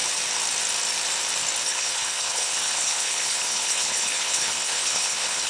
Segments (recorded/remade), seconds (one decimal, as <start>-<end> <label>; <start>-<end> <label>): 0.0-1.6 recorded; 1.6-5.5 remade